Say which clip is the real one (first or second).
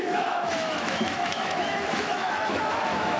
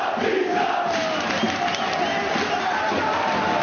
second